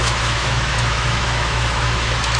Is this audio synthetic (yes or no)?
yes